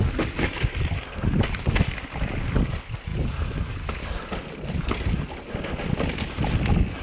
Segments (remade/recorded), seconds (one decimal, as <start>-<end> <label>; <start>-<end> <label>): 0.0-7.0 recorded